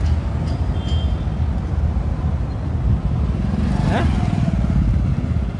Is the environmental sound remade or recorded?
recorded